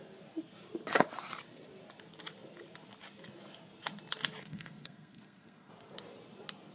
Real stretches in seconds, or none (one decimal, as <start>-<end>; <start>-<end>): 0.0-4.4; 5.7-6.7